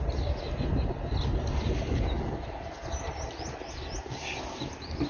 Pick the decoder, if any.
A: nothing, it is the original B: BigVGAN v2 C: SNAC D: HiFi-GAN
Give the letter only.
A